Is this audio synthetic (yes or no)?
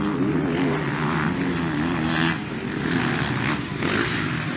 no